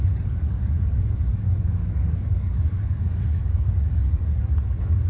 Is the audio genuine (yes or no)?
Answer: no